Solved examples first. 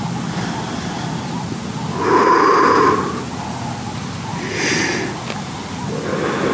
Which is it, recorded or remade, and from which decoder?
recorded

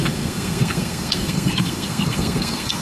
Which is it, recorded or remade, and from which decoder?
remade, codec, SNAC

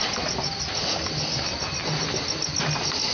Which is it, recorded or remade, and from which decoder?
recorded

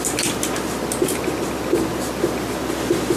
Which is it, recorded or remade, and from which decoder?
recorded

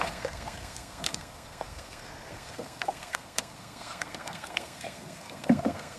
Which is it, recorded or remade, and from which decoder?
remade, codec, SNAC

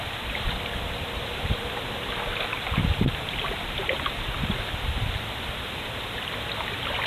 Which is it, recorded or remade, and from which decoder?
recorded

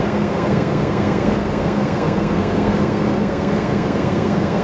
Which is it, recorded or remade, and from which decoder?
remade, codec, SNAC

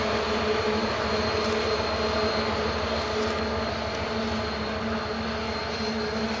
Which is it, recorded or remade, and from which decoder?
recorded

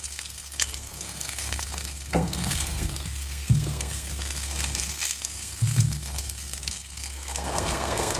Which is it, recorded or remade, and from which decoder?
remade, codec, SNAC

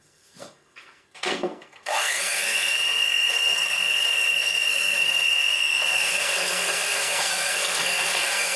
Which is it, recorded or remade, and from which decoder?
remade, codec, SNAC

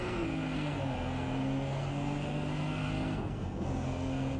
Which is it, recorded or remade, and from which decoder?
remade, codec, SNAC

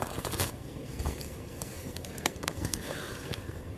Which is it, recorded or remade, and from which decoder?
remade, codec, SNAC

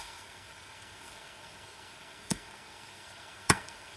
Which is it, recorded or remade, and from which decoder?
remade, codec, SNAC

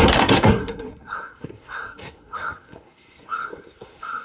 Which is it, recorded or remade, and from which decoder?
remade, codec, SNAC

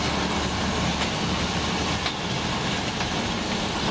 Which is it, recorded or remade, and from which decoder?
recorded